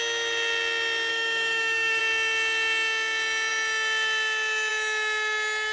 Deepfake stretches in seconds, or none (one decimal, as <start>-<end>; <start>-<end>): 1.1-2.0

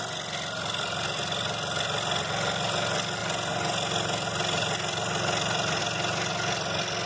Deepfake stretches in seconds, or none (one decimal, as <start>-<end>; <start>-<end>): none

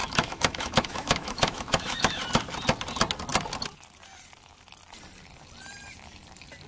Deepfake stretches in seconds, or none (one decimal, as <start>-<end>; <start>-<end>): 0.0-2.2

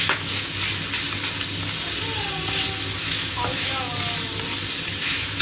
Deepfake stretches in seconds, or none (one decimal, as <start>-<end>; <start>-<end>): 0.0-0.5; 3.0-3.9; 5.0-5.4

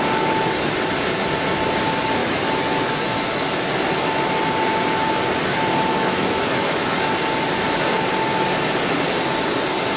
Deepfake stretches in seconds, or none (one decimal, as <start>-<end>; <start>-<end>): 2.2-2.9; 5.9-7.0

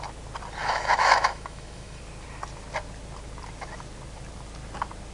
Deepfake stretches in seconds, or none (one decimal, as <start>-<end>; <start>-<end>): 0.6-2.0